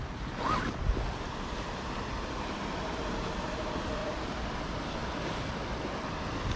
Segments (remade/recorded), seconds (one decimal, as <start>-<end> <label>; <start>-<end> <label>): 0.0-6.6 recorded